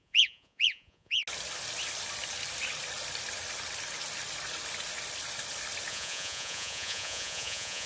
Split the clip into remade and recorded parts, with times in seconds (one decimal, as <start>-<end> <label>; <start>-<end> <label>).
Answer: 0.0-1.2 remade; 1.2-5.9 recorded; 5.9-7.9 remade